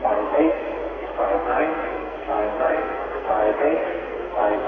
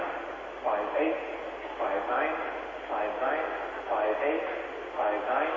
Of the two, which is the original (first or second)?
second